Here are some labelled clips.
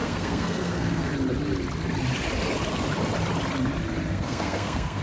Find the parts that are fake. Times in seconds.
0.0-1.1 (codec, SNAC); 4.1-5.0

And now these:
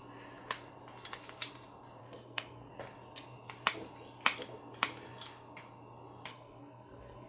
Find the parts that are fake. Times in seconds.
2.0-2.7 (codec, SNAC); 6.3-7.3

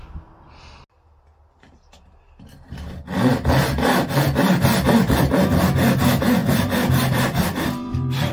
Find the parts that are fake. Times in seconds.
6.4-8.3 (vocoder, BigVGAN v2)

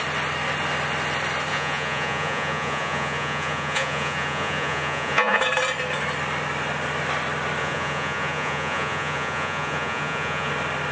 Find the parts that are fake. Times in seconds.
1.5-5.4 (vocoder, Vocos); 7.6-10.5

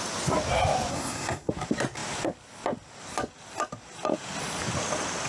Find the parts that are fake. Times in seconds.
0.9-1.5 (codec, SNAC)

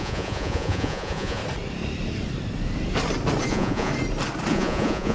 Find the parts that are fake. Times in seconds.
0.0-1.4 (vocoder, Vocos); 3.5-3.9; 4.5-5.1

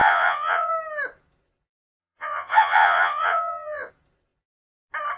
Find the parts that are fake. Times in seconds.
0.0-0.7 (vocoder, Vocos); 2.0-3.9